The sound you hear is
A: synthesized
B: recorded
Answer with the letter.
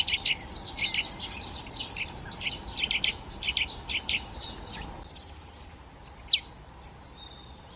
B